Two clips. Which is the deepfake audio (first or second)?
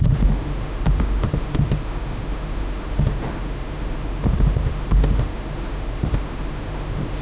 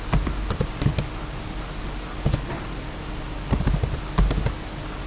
first